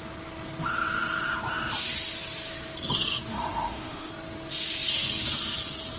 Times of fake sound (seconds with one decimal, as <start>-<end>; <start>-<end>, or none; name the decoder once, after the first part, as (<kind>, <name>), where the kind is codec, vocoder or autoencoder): 3.3-4.1 (autoencoder, DAC-VAE)